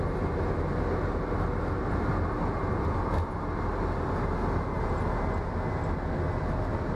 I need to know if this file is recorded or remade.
recorded